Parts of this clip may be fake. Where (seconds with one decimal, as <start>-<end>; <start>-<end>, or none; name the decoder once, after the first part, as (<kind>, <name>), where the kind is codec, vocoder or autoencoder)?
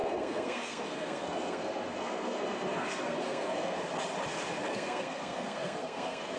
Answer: 0.0-3.8 (codec, SNAC); 4.7-6.4